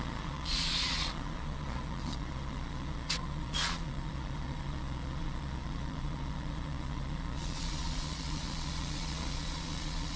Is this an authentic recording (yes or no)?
no